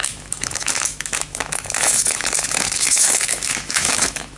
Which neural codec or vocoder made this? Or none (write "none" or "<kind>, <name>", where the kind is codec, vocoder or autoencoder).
autoencoder, DAC-VAE